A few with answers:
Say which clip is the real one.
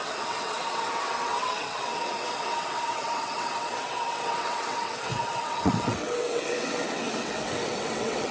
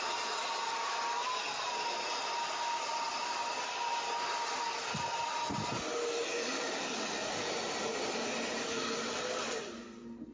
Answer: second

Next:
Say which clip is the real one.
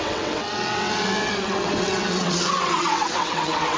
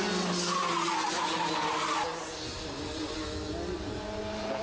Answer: second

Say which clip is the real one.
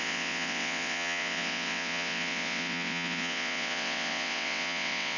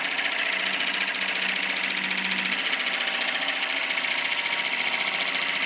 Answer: second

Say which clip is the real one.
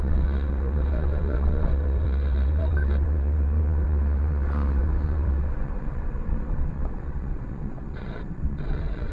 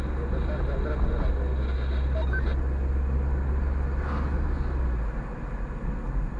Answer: second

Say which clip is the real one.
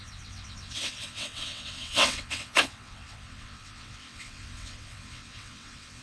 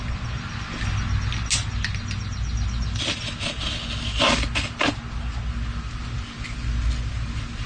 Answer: second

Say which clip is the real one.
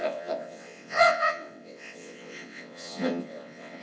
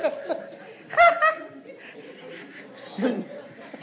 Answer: second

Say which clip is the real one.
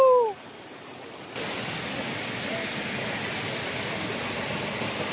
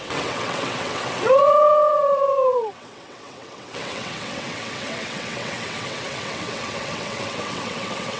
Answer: first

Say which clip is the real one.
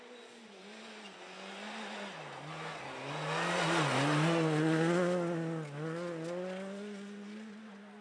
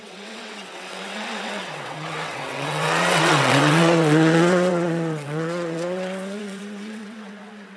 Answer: first